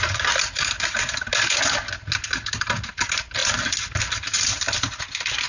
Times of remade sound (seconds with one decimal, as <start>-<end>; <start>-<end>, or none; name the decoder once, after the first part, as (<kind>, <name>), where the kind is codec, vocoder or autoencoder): none